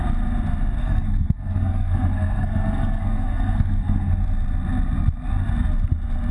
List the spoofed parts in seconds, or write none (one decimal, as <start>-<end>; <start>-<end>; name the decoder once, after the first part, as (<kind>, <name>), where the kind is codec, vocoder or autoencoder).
0.8-4.1 (codec, SNAC)